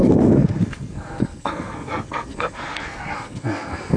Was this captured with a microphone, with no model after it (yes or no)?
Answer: no